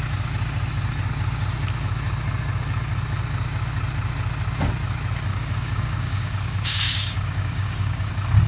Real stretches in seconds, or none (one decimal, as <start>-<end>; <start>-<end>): 0.0-5.3; 8.1-8.5